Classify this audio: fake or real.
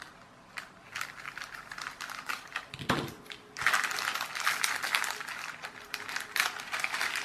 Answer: real